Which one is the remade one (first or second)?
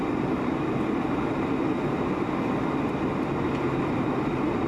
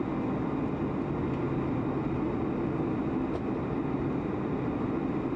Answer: first